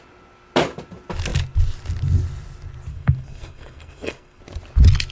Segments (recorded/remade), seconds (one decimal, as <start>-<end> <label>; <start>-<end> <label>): 0.0-2.9 recorded; 2.9-4.4 remade; 4.4-5.1 recorded